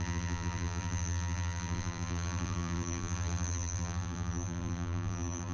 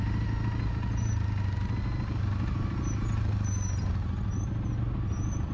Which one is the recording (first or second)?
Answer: second